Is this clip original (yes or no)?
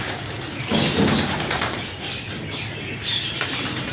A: yes